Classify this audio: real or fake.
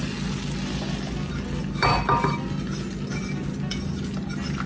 real